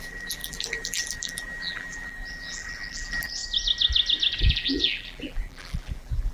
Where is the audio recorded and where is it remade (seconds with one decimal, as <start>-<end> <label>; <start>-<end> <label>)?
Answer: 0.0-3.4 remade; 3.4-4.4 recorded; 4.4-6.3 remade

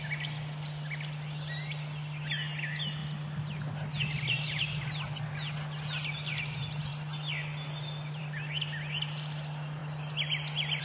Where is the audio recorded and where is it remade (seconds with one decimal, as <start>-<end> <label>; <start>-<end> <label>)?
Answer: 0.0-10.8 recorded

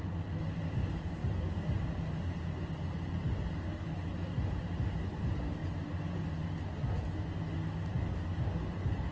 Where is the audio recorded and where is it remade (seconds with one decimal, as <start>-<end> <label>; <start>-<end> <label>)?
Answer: 0.0-9.1 recorded